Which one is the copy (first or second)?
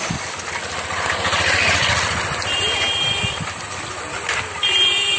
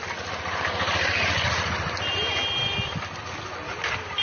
first